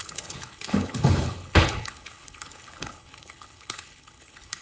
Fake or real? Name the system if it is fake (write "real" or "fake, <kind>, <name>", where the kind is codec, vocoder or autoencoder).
fake, codec, HILCodec